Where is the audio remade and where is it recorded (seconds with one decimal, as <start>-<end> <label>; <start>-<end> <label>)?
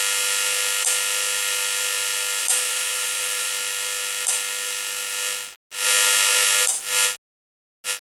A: 0.0-2.4 recorded; 2.4-3.5 remade; 3.5-8.1 recorded